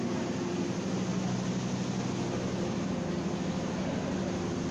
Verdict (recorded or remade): recorded